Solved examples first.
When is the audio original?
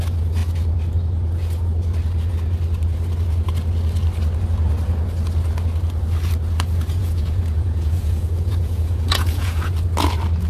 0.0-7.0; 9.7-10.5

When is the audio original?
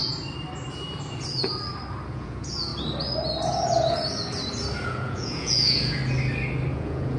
0.0-2.1; 2.7-4.8; 6.0-6.7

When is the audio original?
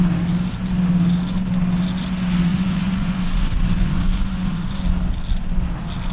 0.0-2.5; 4.8-6.1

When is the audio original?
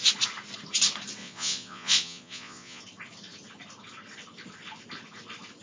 0.0-1.2; 2.8-5.6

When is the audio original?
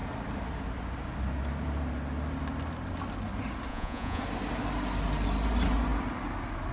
0.0-3.7; 4.2-6.7